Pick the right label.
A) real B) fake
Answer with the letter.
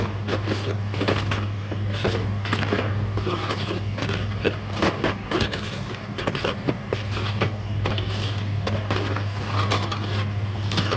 B